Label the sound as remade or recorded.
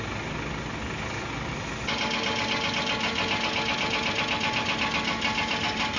recorded